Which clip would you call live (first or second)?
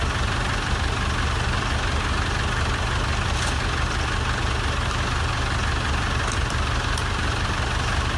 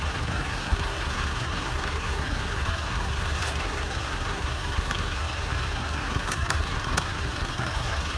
first